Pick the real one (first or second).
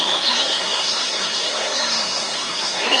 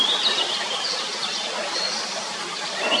second